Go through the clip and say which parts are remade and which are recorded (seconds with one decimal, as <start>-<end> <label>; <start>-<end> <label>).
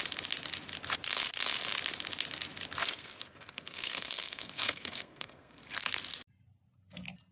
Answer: 0.0-2.8 recorded; 2.8-5.6 remade; 5.6-7.3 recorded